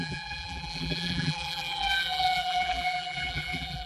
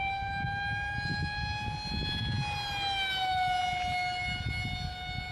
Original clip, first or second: second